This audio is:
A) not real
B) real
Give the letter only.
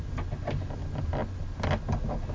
B